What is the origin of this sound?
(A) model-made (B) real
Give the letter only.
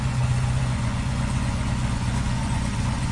A